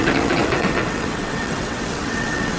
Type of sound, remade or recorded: remade